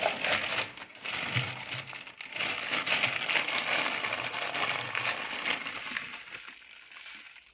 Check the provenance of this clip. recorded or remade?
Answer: recorded